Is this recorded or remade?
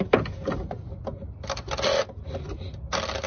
recorded